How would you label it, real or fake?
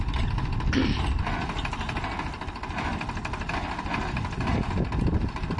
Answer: real